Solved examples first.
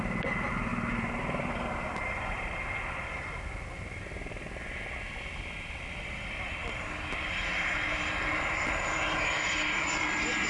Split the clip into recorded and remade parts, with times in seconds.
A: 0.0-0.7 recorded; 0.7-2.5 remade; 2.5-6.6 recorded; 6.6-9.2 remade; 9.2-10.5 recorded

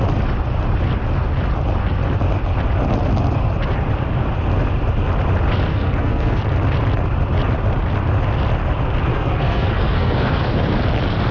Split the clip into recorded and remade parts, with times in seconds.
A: 0.0-5.7 recorded; 5.7-6.4 remade; 6.4-9.1 recorded; 9.1-10.4 remade; 10.4-11.3 recorded

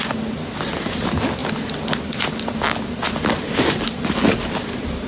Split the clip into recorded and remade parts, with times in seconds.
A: 0.0-5.1 recorded

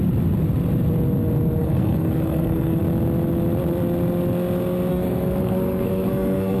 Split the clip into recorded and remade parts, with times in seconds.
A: 0.0-1.6 recorded; 1.6-2.8 remade; 2.8-4.9 recorded; 4.9-6.6 remade

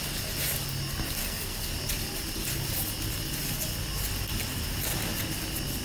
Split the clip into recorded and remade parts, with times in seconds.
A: 0.0-1.2 recorded; 1.2-1.7 remade; 1.7-5.8 recorded